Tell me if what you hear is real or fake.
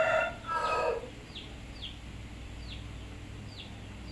real